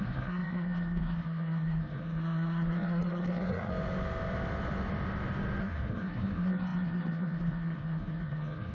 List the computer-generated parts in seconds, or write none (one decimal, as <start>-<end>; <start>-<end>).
0.0-3.7; 5.6-8.7